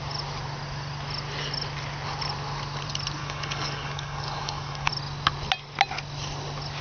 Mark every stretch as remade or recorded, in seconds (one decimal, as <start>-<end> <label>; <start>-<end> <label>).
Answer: 0.0-3.2 recorded; 3.2-4.9 remade; 4.9-6.8 recorded